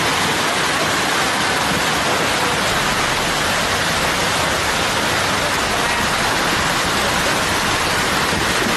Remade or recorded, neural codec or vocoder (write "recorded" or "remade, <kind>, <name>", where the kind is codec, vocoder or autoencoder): recorded